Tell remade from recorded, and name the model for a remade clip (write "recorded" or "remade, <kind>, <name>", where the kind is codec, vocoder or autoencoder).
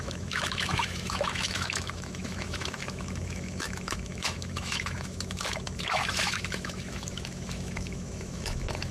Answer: remade, autoencoder, DAC-VAE